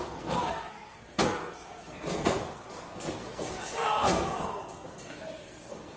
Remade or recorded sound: remade